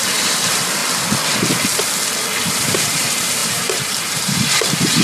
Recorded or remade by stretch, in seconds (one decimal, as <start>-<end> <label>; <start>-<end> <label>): 0.0-0.8 remade; 0.8-2.5 recorded; 2.5-5.0 remade